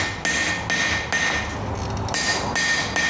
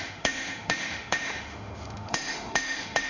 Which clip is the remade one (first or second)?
second